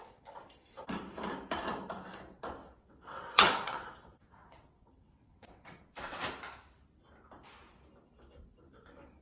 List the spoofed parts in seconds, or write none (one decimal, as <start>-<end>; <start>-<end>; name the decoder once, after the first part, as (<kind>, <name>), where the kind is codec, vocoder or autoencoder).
2.6-6.2 (vocoder, WaveNeXt)